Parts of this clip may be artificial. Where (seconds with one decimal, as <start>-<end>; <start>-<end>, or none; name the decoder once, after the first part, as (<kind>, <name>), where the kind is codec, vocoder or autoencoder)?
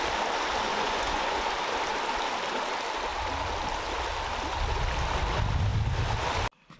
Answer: 0.7-1.5 (vocoder, Vocos)